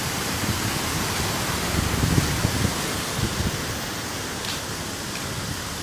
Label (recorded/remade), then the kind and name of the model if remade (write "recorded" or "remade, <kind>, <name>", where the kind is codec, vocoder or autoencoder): recorded